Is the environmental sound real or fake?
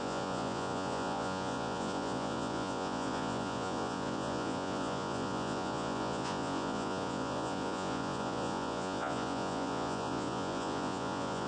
fake